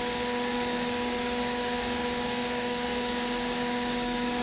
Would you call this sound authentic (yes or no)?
no